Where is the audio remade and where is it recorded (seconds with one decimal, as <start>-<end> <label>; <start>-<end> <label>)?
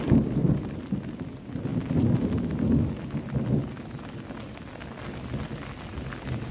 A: 0.0-6.5 recorded